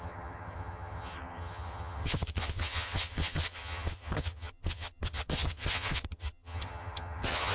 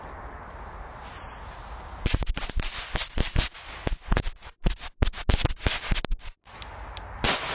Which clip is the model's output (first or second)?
first